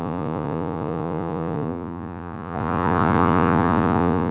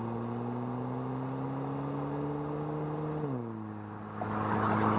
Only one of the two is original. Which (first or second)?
second